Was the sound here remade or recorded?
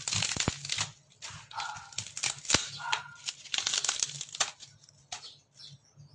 recorded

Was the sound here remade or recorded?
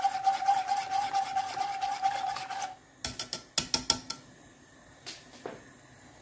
recorded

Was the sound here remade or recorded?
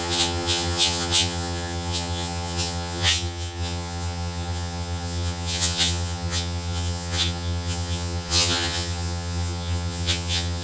remade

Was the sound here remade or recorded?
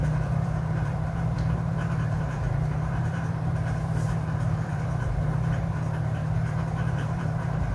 remade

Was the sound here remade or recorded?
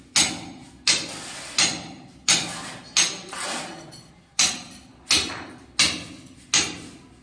recorded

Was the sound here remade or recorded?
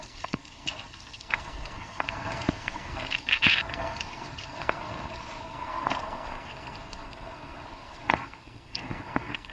remade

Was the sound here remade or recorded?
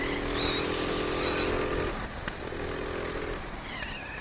recorded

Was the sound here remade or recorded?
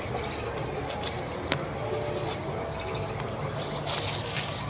recorded